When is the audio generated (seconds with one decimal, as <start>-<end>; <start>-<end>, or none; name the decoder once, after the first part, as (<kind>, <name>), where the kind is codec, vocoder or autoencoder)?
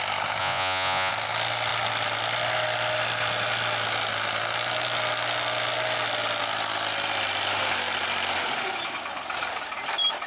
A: 0.4-1.1 (vocoder, Vocos)